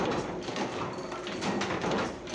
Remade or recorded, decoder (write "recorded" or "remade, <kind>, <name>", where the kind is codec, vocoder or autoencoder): recorded